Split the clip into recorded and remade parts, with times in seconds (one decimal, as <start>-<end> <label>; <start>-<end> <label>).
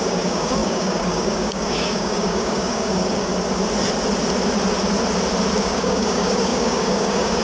0.0-3.3 remade; 3.3-5.6 recorded; 5.6-7.4 remade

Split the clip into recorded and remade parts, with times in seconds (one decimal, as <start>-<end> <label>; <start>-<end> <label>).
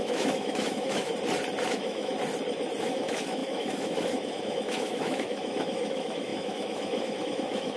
0.0-1.1 remade; 1.1-1.7 recorded; 1.7-2.1 remade; 2.1-2.8 recorded; 2.8-7.8 remade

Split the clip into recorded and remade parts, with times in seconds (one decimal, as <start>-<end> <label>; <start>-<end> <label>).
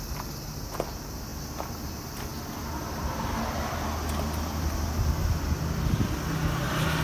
0.0-7.0 recorded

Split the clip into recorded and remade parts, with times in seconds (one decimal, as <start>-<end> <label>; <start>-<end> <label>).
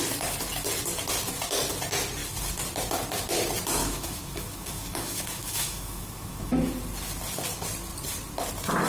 0.0-3.8 recorded; 3.8-6.6 remade; 6.6-8.9 recorded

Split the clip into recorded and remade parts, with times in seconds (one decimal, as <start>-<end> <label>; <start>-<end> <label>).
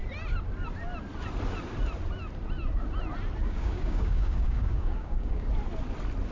0.0-3.4 recorded; 3.4-5.5 remade; 5.5-6.3 recorded